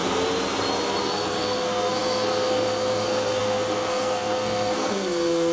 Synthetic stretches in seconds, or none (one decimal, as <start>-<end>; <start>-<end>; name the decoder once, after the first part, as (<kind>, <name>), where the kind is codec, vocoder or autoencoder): 1.0-5.5 (codec, SNAC)